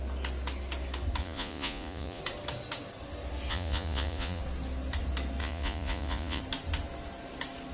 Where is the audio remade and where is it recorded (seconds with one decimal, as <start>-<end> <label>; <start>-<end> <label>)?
0.0-1.2 recorded; 1.2-2.2 remade; 2.2-3.5 recorded; 3.5-4.4 remade; 4.4-5.4 recorded; 5.4-6.4 remade; 6.4-7.7 recorded